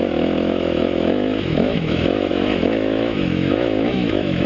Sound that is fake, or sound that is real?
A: fake